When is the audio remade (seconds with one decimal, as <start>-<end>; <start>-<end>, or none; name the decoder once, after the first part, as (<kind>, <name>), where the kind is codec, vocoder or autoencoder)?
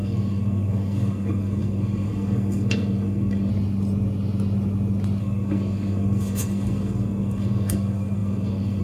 0.0-3.5 (codec, SNAC); 5.2-8.8